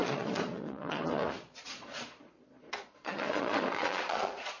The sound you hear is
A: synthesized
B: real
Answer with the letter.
A